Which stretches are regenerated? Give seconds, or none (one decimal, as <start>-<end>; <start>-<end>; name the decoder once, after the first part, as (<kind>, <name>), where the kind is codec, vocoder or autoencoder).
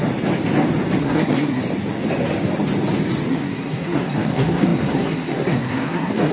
1.0-1.6 (codec, SNAC); 3.3-6.3